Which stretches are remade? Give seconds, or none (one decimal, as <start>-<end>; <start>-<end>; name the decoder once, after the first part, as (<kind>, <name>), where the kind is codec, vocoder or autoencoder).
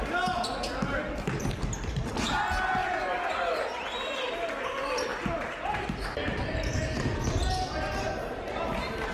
none